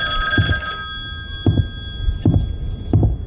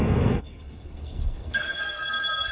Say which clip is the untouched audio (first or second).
first